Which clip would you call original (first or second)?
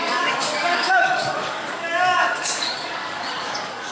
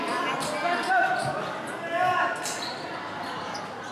second